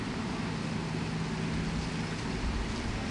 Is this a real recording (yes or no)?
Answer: yes